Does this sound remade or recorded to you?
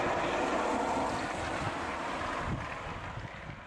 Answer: recorded